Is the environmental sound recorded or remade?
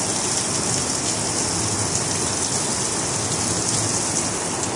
recorded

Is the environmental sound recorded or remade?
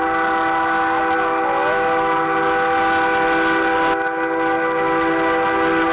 recorded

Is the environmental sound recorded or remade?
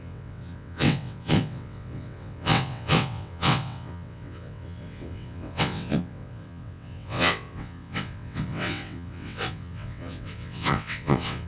remade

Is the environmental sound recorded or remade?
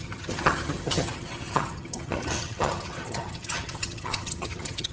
remade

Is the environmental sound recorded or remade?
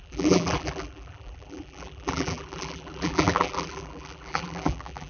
remade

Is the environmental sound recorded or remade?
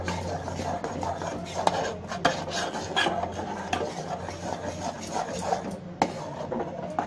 recorded